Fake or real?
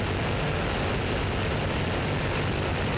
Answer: real